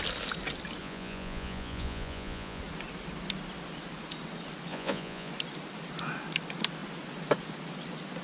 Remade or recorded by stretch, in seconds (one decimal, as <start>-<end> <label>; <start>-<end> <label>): 0.0-0.8 recorded; 0.8-2.6 remade; 2.6-4.7 recorded; 4.7-5.3 remade; 5.3-8.2 recorded

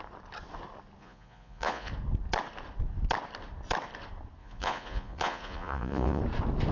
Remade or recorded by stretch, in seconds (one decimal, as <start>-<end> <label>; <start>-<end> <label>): 0.0-1.0 recorded; 1.0-1.9 remade; 1.9-4.4 recorded; 4.4-6.2 remade; 6.2-6.7 recorded

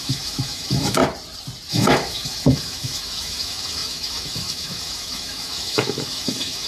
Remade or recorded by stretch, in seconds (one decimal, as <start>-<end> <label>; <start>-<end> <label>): 0.0-1.0 remade; 1.0-1.7 recorded; 1.7-6.7 remade

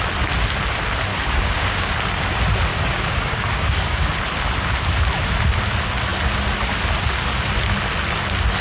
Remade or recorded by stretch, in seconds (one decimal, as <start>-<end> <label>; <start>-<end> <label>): 0.0-1.1 recorded; 1.1-1.9 remade; 1.9-2.7 recorded; 2.7-4.1 remade; 4.1-8.6 recorded

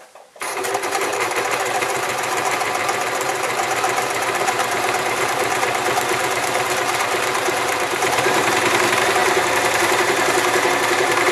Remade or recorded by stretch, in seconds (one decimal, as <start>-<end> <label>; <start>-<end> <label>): 0.0-11.3 remade

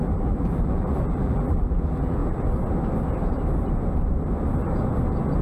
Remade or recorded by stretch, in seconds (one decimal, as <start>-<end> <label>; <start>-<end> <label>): 0.0-2.2 remade; 2.2-5.4 recorded

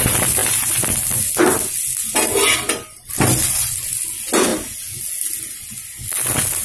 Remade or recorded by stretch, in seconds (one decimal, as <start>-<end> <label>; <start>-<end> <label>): 0.0-6.6 recorded

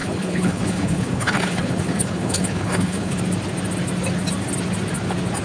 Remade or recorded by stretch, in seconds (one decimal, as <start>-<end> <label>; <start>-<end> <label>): 0.0-3.2 remade; 3.2-5.4 recorded